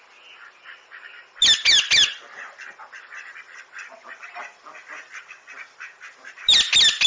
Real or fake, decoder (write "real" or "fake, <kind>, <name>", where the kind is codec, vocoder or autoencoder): real